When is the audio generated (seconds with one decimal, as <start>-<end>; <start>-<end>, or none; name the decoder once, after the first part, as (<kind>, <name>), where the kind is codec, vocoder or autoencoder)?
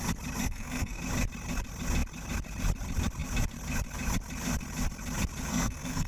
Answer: 0.4-1.0 (codec, SNAC); 5.5-6.1